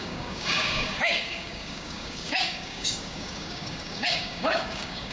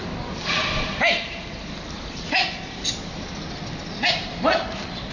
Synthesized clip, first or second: first